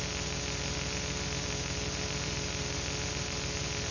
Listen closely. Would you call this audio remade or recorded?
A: recorded